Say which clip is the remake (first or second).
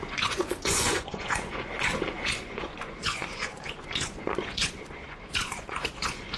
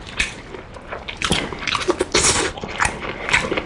first